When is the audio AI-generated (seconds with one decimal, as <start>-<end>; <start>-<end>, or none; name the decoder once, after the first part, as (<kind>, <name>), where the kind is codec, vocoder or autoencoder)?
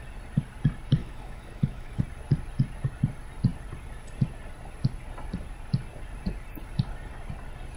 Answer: 1.0-2.0 (autoencoder, DAC-VAE)